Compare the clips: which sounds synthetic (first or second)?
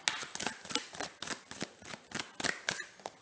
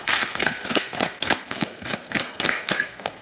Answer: second